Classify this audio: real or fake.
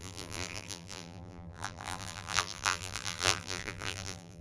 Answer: fake